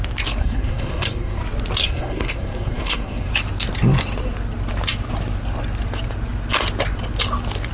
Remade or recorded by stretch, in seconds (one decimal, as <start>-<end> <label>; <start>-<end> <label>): 0.0-0.4 recorded; 0.4-1.4 remade; 1.4-1.8 recorded; 1.8-3.3 remade; 3.3-7.7 recorded